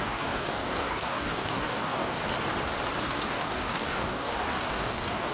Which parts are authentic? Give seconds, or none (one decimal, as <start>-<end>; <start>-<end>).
2.2-3.0